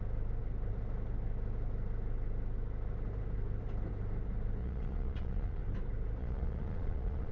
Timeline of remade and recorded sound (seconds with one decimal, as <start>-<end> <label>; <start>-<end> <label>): 0.0-4.6 recorded; 4.6-5.6 remade; 5.6-6.2 recorded; 6.2-7.3 remade